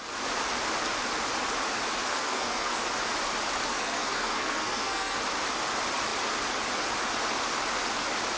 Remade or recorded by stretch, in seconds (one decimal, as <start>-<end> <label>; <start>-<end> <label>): 0.0-2.1 recorded; 2.1-2.8 remade; 2.8-3.7 recorded; 3.7-5.2 remade; 5.2-8.4 recorded